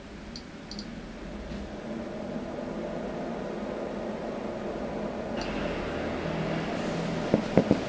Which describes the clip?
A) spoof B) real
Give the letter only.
B